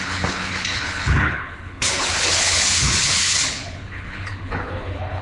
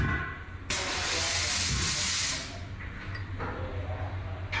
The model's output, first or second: first